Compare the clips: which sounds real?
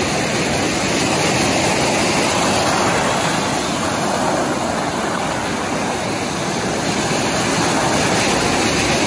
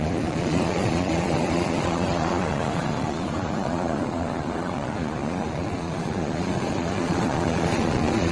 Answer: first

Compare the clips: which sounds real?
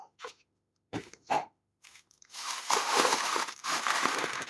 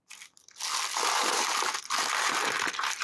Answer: second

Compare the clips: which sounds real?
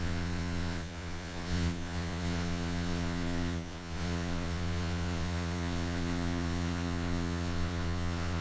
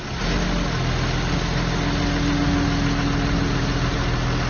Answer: second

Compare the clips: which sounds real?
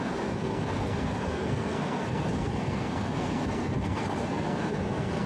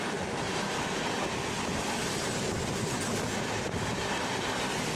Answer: second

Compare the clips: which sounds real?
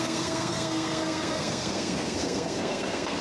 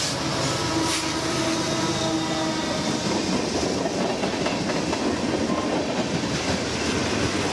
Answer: second